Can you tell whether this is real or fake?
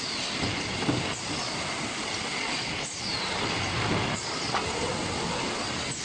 real